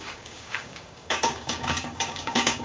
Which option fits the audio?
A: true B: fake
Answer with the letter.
B